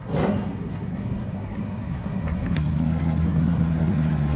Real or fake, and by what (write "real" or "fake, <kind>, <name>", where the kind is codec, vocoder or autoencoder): fake, codec, SNAC